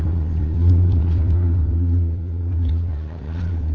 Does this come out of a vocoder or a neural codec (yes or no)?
yes